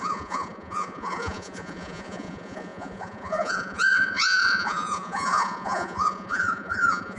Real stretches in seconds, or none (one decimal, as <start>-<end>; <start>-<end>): none